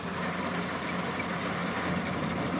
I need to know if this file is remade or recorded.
recorded